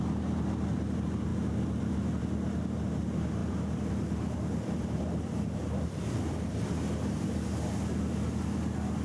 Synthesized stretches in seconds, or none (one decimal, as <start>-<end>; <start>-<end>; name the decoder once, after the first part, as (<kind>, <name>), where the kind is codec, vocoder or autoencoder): 3.4-6.6 (vocoder, BigVGAN v2)